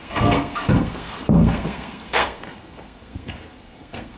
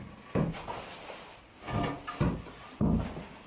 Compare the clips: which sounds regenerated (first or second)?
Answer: first